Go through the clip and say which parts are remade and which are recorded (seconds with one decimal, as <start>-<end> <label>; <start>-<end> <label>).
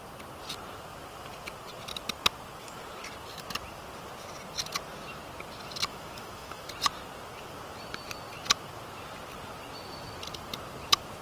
0.0-5.9 recorded; 5.9-6.7 remade; 6.7-11.2 recorded